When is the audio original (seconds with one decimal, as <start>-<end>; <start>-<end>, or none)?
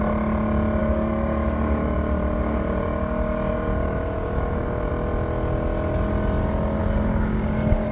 0.0-0.8; 4.9-6.8